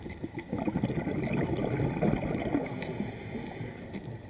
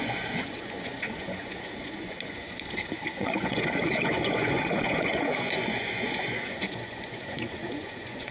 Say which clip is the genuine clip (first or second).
first